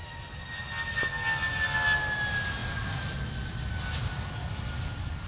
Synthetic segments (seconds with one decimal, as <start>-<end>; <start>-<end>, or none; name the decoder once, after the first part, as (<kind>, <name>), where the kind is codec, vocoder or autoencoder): 0.0-1.0 (vocoder, BigVGAN v2); 4.4-5.3